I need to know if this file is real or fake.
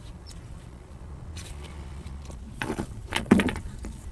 fake